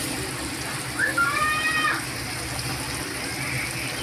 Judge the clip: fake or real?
fake